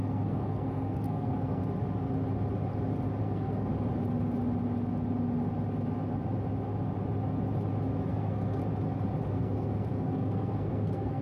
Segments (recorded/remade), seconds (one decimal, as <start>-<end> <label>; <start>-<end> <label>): 0.0-1.6 remade; 1.6-3.2 recorded; 3.2-3.7 remade; 3.7-8.1 recorded; 8.1-8.6 remade; 8.6-9.2 recorded; 9.2-11.2 remade